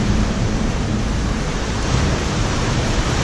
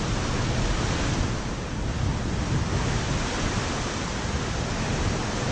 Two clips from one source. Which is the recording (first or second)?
second